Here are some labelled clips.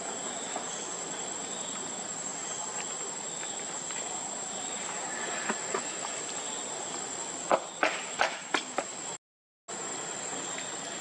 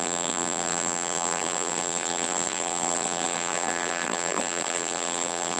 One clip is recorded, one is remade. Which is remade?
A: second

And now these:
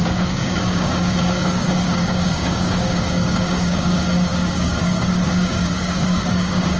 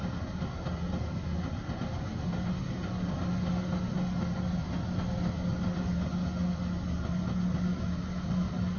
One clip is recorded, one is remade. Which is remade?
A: first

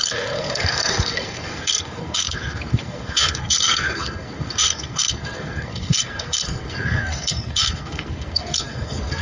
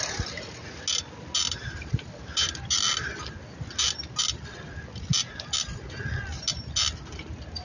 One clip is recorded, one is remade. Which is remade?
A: first